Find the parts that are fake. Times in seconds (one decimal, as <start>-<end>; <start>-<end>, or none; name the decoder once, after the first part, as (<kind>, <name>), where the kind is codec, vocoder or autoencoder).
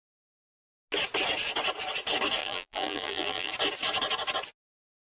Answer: 2.4-3.5 (vocoder, BigVGAN v2)